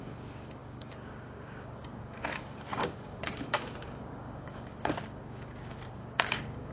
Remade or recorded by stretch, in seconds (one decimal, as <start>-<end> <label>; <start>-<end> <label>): 0.0-6.7 remade